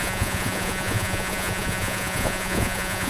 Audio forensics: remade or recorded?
remade